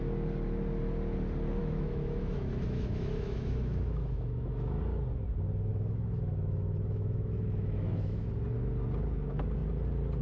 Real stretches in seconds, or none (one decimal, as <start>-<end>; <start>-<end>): 0.0-1.6; 4.8-5.7; 8.3-10.2